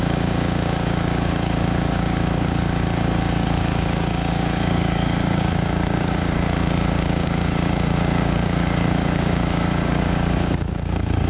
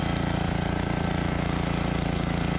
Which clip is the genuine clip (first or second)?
second